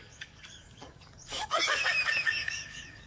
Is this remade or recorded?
remade